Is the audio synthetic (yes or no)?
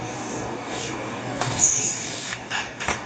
yes